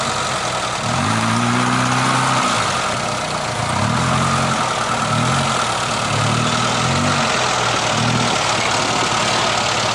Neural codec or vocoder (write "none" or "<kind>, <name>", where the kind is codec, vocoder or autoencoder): none